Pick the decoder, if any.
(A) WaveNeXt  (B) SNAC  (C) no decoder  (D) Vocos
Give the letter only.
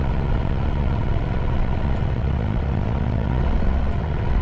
A